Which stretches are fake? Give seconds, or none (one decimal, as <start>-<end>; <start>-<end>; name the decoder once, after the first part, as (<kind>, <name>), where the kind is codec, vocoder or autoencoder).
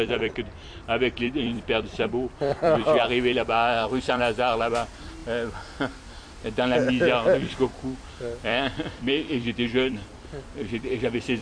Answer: 0.0-5.2 (vocoder, BigVGAN v2); 8.0-11.4